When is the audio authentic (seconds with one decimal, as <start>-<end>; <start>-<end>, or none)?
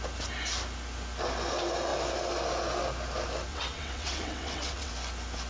0.0-3.5; 4.9-5.5